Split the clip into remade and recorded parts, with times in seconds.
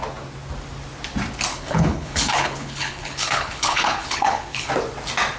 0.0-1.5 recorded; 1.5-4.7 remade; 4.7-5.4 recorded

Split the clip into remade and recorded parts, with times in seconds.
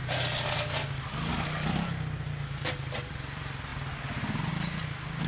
0.0-5.3 recorded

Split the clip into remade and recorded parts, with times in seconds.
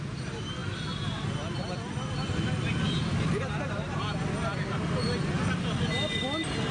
0.0-6.7 recorded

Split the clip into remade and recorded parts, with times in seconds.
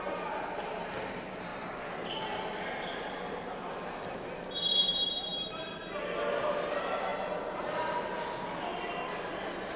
0.0-9.8 recorded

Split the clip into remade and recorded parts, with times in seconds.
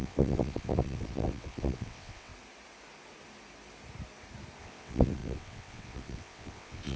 0.0-2.3 remade; 2.3-4.6 recorded; 4.6-7.0 remade